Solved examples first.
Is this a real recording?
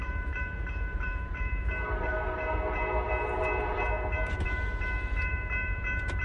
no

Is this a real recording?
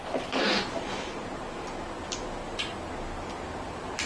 yes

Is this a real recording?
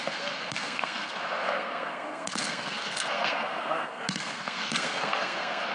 no